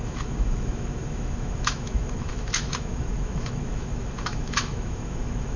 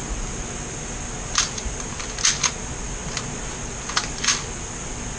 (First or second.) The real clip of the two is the second